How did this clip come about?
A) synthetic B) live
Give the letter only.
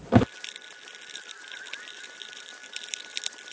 B